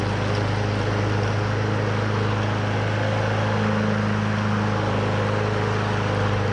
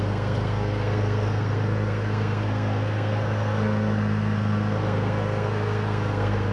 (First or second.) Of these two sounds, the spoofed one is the second